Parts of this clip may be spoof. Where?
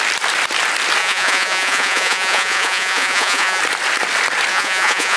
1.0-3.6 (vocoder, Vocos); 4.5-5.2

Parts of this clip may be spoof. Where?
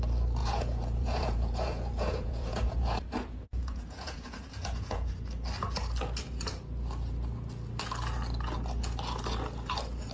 0.4-5.1 (vocoder, Vocos)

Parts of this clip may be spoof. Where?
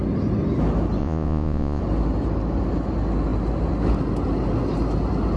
1.0-1.8 (vocoder, Vocos)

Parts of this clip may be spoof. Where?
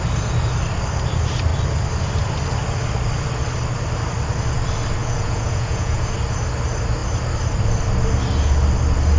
5.0-6.1 (vocoder, Vocos)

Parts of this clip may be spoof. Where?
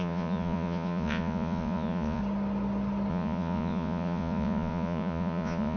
0.0-2.2 (vocoder, Vocos); 3.1-5.8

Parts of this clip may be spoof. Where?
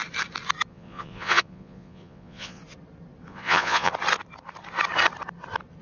0.7-2.6 (vocoder, Vocos); 3.3-3.9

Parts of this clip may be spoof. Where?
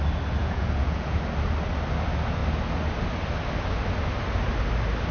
0.4-1.2 (vocoder, Vocos)